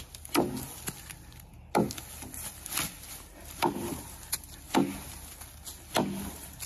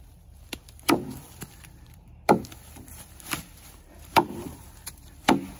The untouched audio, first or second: first